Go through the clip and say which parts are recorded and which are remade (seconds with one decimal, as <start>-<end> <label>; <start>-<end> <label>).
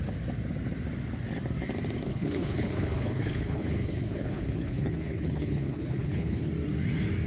0.0-2.1 recorded; 2.1-6.5 remade; 6.5-7.3 recorded